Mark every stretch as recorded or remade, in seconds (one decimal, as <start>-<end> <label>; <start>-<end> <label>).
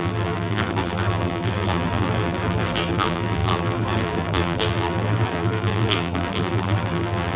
0.0-7.4 remade